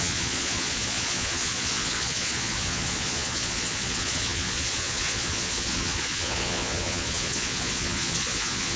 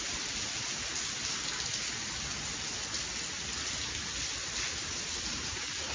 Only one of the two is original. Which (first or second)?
second